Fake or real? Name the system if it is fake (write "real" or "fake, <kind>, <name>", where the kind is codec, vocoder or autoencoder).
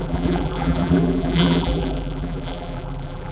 fake, vocoder, BigVGAN v2